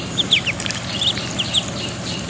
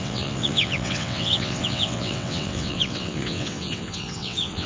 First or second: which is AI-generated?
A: second